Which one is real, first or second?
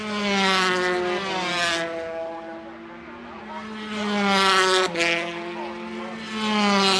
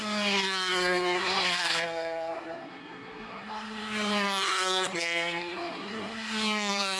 first